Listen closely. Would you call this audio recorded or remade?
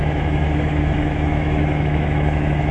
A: remade